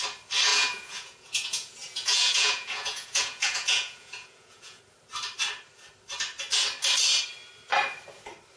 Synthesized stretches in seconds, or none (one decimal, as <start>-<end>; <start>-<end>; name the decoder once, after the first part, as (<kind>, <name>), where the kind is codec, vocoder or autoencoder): 0.5-4.8 (vocoder, Vocos)

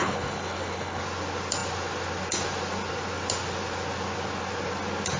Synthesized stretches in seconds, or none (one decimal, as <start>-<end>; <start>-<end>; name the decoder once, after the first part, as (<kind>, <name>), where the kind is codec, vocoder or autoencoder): 0.0-1.0 (codec, HILCodec)

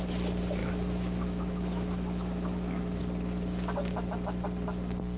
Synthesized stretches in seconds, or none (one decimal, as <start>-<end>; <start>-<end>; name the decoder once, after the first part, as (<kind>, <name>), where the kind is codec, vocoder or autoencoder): 0.6-3.0 (autoencoder, DAC-VAE)

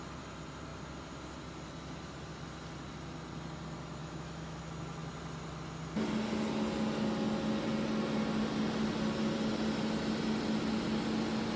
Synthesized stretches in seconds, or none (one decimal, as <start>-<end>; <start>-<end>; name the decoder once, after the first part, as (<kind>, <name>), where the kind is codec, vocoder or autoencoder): 4.0-4.6 (autoencoder, DAC-VAE)

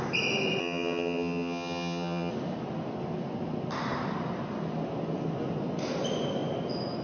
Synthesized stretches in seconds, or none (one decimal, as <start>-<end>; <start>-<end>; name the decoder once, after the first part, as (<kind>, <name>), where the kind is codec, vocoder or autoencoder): 0.6-2.3 (vocoder, HiFi-GAN)

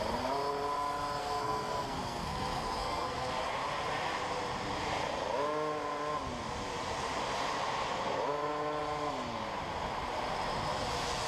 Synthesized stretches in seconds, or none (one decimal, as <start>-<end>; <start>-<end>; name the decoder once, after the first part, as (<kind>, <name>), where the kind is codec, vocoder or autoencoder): 1.2-3.3 (codec, SNAC)

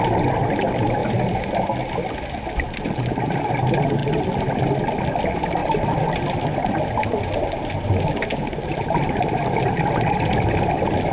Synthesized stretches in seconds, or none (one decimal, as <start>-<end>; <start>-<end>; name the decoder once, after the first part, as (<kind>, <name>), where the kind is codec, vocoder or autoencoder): none

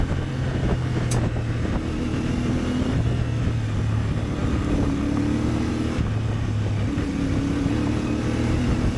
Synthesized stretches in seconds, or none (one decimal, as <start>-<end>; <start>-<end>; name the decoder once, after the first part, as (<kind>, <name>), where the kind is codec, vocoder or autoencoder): none